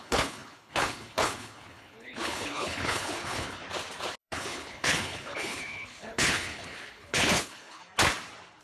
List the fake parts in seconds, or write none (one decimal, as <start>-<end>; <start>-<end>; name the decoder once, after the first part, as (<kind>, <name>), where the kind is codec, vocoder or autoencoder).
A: 0.0-3.6 (codec, HILCodec); 4.2-7.8